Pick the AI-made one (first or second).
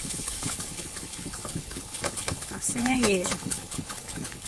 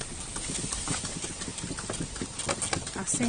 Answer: first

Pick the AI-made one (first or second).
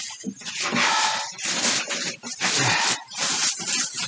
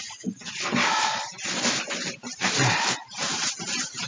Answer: second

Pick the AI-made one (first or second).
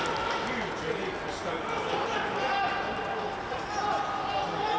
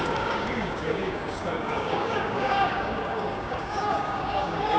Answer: second